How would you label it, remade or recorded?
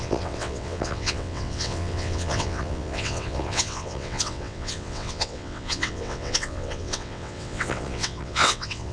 remade